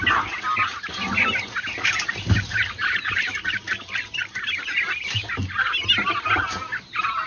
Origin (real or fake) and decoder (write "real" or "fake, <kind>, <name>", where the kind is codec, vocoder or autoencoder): real